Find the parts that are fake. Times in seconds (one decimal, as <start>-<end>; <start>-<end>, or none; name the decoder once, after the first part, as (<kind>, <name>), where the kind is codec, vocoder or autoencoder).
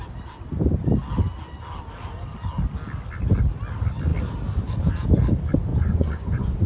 5.7-6.7 (vocoder, Vocos)